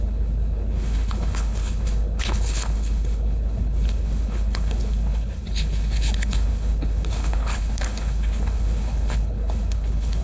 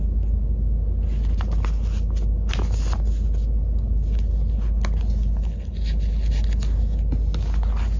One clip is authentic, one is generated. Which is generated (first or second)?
first